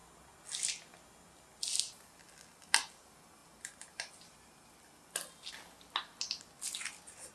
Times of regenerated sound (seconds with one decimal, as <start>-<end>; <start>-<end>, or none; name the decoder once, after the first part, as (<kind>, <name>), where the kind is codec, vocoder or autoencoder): none